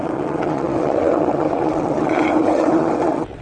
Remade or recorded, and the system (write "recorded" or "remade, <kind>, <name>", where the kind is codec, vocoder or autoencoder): remade, vocoder, WaveNeXt